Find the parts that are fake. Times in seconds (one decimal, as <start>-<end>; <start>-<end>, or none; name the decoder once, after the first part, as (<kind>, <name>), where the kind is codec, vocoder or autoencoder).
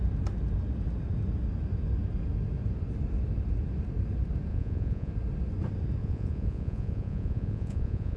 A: 4.5-5.1 (vocoder, Vocos); 6.0-8.2